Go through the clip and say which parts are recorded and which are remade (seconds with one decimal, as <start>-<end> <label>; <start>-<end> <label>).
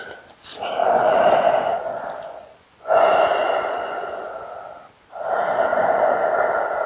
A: 0.0-0.8 recorded; 0.8-4.4 remade; 4.4-5.7 recorded; 5.7-6.3 remade; 6.3-6.9 recorded